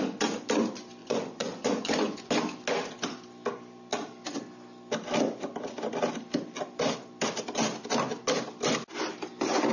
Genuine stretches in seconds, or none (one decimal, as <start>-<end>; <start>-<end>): 0.0-1.0; 2.3-9.7